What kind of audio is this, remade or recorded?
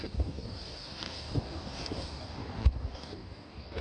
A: remade